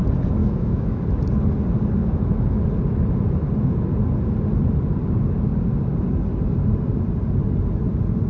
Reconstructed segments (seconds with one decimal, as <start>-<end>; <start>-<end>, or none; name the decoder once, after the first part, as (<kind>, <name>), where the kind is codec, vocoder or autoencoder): 0.4-1.0 (autoencoder, DAC-VAE); 2.0-2.6

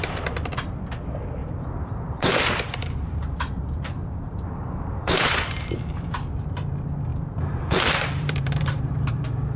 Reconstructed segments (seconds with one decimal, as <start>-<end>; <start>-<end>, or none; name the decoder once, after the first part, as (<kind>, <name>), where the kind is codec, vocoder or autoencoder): 1.4-6.5 (vocoder, BigVGAN v2); 7.1-9.1

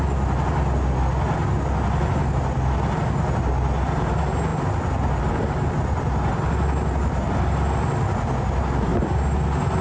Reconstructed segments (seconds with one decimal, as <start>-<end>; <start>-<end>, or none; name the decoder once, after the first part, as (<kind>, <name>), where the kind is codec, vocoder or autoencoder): none

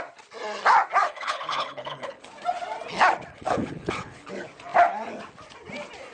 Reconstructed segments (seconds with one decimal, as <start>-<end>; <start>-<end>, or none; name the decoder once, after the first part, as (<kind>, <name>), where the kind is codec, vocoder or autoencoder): 1.0-2.3 (codec, HILCodec); 3.3-4.3

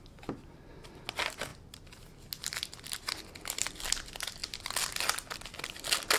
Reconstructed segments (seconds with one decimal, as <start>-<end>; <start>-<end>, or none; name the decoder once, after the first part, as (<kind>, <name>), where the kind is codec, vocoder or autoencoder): none

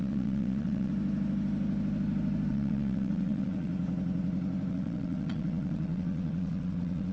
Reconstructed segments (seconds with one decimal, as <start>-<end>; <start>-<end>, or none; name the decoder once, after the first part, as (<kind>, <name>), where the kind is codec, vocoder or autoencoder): 0.0-0.9 (vocoder, WaveNeXt); 2.5-3.7; 4.7-7.1

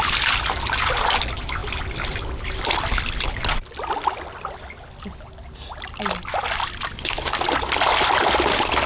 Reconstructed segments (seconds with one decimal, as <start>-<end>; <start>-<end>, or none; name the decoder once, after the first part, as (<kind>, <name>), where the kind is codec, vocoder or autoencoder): none